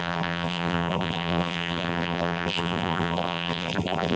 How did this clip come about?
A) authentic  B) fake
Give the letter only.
B